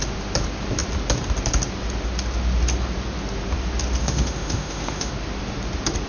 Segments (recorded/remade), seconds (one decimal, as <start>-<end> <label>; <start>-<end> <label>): 0.0-4.0 recorded; 4.0-5.1 remade; 5.1-6.1 recorded